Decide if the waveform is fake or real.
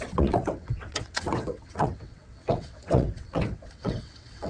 fake